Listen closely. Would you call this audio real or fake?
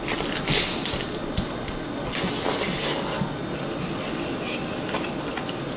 real